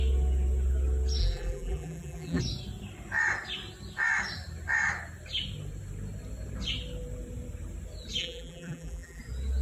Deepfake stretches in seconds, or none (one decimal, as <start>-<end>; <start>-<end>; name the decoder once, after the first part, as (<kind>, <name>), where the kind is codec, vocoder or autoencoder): 1.2-2.4 (vocoder, BigVGAN v2); 8.2-9.2